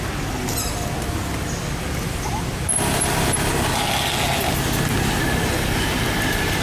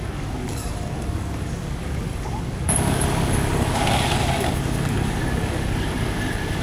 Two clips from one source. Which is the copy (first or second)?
second